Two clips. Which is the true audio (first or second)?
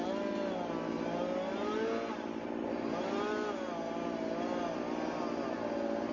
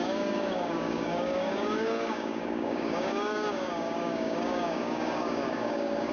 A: first